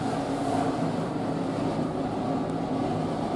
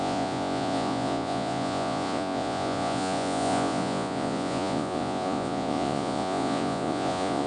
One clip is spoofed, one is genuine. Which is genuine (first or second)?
first